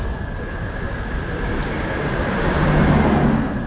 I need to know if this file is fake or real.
real